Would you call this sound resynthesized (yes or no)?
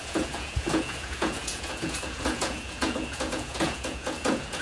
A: yes